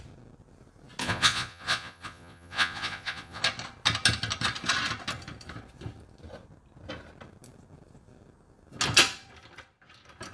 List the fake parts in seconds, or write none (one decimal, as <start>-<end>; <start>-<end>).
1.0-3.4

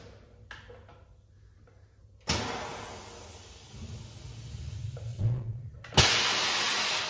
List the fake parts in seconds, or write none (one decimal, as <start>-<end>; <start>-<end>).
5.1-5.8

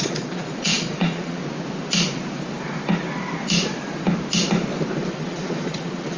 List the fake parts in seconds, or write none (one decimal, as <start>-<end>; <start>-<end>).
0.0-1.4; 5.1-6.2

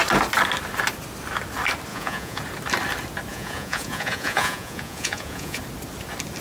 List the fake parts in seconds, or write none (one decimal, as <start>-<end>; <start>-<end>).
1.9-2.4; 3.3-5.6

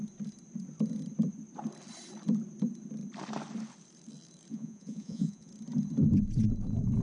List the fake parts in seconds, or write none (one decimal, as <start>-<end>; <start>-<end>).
4.5-5.5

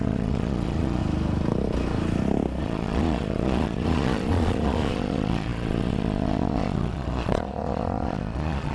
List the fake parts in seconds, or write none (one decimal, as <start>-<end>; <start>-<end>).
0.0-1.0; 2.6-8.7

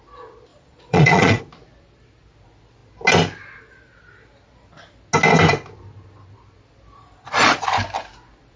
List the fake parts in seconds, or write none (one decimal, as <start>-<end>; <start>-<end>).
0.5-1.4; 7.0-7.6